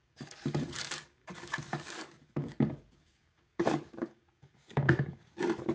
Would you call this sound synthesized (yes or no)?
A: yes